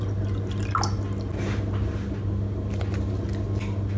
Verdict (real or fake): real